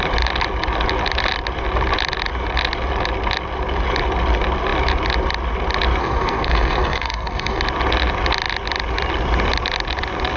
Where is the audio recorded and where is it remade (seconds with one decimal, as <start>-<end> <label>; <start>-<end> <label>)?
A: 0.0-6.0 recorded; 6.0-7.6 remade; 7.6-10.4 recorded

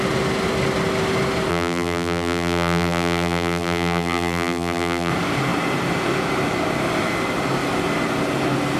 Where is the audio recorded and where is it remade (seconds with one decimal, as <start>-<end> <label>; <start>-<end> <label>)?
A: 0.0-1.5 recorded; 1.5-5.1 remade; 5.1-8.8 recorded

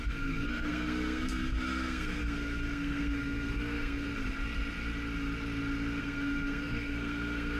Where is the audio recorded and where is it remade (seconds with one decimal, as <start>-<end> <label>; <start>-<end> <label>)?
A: 0.0-4.1 remade; 4.1-6.0 recorded; 6.0-7.6 remade

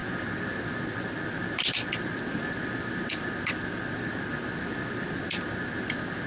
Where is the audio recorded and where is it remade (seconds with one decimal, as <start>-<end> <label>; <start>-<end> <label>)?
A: 0.0-6.3 recorded